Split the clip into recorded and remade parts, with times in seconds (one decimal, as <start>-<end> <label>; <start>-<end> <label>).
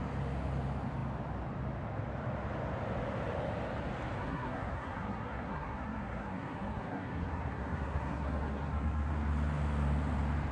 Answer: 0.0-4.2 recorded; 4.2-9.1 remade; 9.1-10.5 recorded